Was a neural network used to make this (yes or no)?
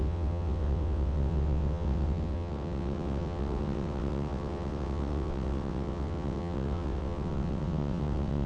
yes